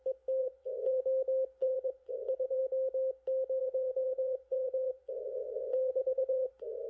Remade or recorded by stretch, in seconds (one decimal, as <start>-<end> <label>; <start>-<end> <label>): 0.0-0.4 recorded; 0.4-1.0 remade; 1.0-1.6 recorded; 1.6-2.6 remade; 2.6-3.6 recorded; 3.6-6.5 remade; 6.5-6.9 recorded